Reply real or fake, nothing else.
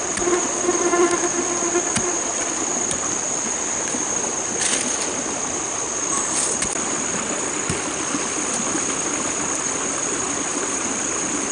real